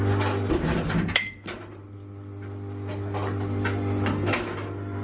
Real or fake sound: real